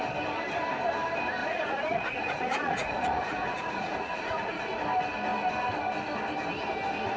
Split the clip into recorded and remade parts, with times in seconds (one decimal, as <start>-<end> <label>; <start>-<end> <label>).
0.0-1.4 recorded; 1.4-4.6 remade; 4.6-7.2 recorded